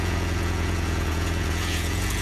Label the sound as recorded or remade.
remade